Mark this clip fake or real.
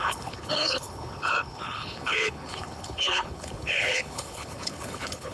fake